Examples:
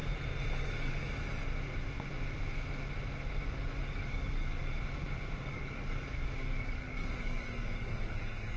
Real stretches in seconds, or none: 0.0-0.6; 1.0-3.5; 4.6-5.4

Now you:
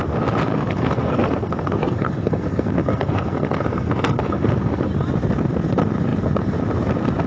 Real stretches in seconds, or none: 0.0-0.5; 4.9-7.3

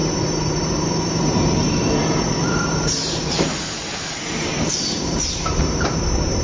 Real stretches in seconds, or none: none

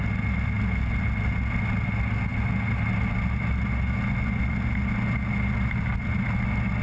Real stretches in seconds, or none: 0.0-6.8